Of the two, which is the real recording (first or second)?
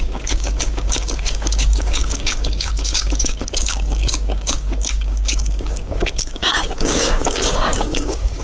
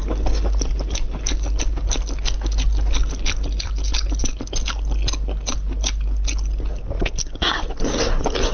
second